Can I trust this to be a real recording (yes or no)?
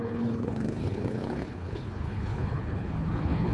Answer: no